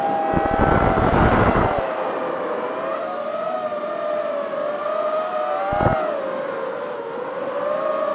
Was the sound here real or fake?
real